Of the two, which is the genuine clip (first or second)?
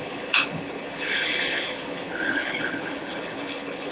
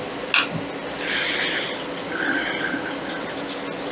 second